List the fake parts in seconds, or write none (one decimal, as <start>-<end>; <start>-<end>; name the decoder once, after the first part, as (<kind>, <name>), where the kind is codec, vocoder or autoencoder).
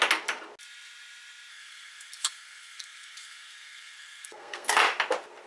1.5-4.8 (codec, SNAC)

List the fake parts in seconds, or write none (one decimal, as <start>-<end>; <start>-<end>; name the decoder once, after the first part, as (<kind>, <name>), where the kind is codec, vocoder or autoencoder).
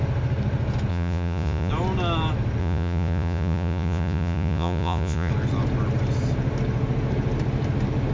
0.9-1.7 (vocoder, Vocos); 2.6-5.3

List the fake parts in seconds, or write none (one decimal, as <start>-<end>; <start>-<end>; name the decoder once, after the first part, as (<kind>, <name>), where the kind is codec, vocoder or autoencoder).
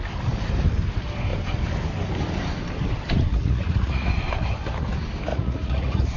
3.3-4.1 (vocoder, Vocos); 5.3-6.2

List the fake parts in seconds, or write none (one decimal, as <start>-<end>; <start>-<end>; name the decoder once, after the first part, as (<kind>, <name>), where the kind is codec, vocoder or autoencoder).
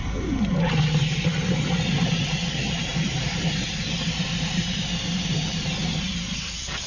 2.9-6.5 (vocoder, BigVGAN v2)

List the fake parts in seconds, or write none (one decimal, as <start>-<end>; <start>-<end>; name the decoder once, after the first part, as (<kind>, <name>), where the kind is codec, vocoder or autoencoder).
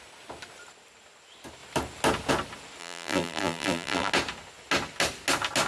2.8-4.1 (vocoder, BigVGAN v2)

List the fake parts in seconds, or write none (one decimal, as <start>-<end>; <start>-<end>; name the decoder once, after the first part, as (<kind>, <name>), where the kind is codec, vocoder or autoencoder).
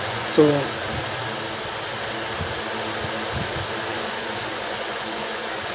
0.0-0.5 (vocoder, Vocos); 3.9-5.7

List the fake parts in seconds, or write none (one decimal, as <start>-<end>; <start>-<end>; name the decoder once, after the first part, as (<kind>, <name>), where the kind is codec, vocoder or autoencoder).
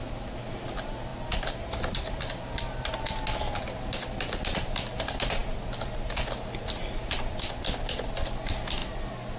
none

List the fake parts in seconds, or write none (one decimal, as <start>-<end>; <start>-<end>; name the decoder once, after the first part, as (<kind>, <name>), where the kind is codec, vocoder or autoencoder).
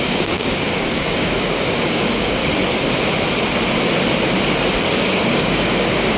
0.0-2.4 (codec, DAC); 4.8-6.2